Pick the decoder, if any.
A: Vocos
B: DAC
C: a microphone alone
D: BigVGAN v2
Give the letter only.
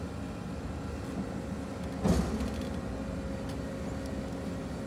C